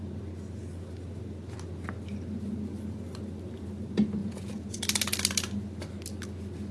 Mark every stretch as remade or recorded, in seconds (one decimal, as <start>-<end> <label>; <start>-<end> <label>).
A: 0.0-4.2 recorded; 4.2-4.8 remade; 4.8-6.7 recorded

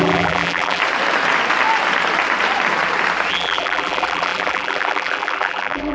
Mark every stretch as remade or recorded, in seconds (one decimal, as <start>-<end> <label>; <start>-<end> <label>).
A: 0.0-0.8 remade; 0.8-3.3 recorded; 3.3-5.9 remade

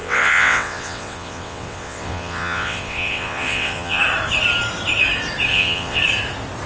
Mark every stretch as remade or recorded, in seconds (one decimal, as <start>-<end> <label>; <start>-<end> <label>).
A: 0.0-4.0 remade; 4.0-5.5 recorded; 5.5-6.0 remade; 6.0-6.7 recorded

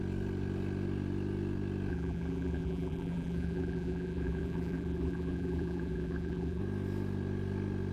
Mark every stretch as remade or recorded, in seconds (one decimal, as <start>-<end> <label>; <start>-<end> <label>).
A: 0.0-1.9 recorded; 1.9-6.6 remade; 6.6-7.9 recorded

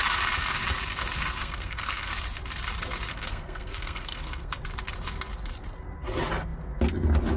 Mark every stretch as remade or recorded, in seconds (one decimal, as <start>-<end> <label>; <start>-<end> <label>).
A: 0.0-1.4 recorded; 1.4-2.1 remade; 2.1-3.1 recorded; 3.1-4.5 remade; 4.5-7.4 recorded

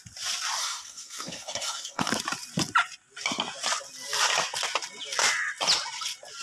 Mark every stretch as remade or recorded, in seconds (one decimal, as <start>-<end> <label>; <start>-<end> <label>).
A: 0.0-0.6 recorded; 0.6-2.1 remade; 2.1-6.4 recorded